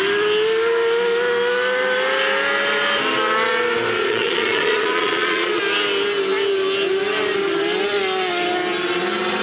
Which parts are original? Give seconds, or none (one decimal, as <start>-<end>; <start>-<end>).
0.0-4.1; 5.6-9.4